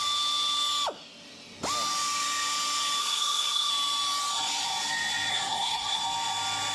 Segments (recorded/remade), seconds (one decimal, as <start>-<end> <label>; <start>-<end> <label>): 0.0-3.0 recorded; 3.0-3.7 remade; 3.7-5.3 recorded; 5.3-6.0 remade; 6.0-6.7 recorded